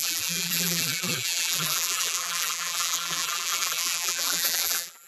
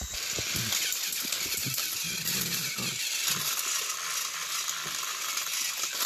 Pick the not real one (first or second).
first